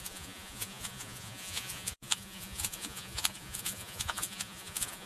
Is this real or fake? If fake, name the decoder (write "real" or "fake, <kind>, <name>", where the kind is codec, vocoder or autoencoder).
fake, vocoder, Vocos